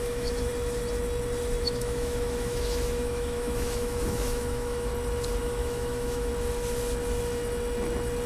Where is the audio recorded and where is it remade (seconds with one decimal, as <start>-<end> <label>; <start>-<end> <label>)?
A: 0.0-0.5 remade; 0.5-1.6 recorded; 1.6-4.9 remade; 4.9-5.4 recorded; 5.4-6.3 remade; 6.3-8.3 recorded